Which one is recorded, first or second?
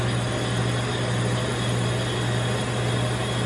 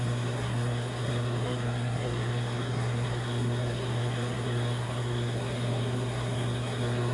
first